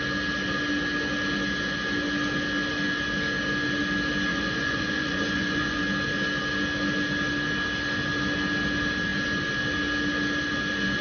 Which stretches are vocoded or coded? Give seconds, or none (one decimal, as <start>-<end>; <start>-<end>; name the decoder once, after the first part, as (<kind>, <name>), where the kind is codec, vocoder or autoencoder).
4.3-5.8 (vocoder, Vocos)